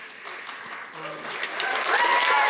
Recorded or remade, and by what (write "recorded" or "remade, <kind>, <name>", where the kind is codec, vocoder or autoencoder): recorded